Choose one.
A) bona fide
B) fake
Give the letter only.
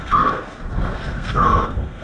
B